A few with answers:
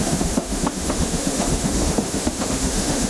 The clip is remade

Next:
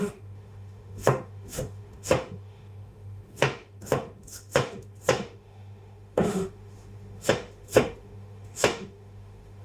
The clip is remade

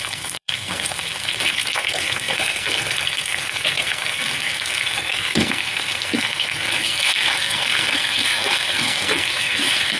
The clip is remade